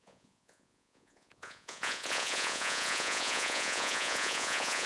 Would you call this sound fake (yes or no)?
yes